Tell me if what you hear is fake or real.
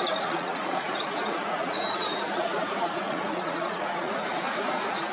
fake